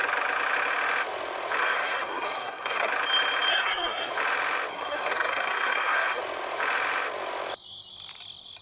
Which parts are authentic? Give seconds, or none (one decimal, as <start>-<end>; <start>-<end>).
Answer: 0.0-1.6; 2.9-3.5; 4.1-4.7; 6.2-8.6